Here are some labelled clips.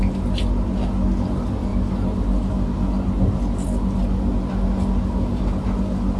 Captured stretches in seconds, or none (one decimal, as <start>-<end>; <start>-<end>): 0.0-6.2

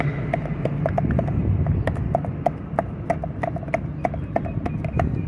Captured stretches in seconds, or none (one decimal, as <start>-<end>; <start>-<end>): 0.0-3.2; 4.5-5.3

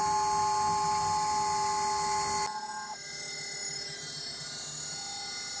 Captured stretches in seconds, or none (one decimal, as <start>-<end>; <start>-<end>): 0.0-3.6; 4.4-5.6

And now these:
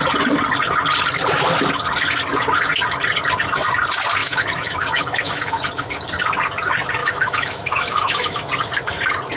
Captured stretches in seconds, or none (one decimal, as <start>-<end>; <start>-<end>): 0.0-4.2; 5.5-7.0; 8.5-9.4